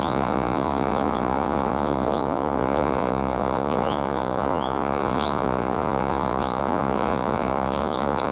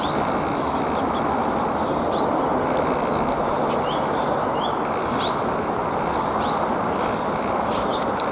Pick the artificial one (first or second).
first